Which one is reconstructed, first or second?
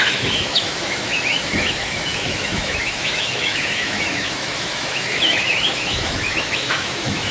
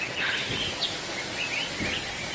first